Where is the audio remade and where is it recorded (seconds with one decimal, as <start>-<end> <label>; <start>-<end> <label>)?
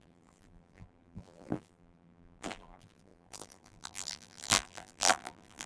0.0-5.7 remade